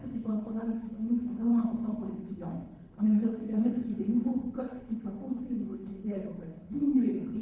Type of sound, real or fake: fake